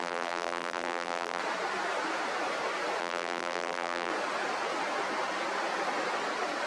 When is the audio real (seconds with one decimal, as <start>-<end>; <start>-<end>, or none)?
1.4-3.0; 4.1-6.7